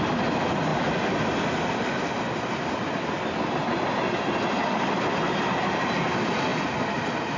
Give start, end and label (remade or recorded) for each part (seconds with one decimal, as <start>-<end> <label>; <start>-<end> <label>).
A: 0.0-7.4 recorded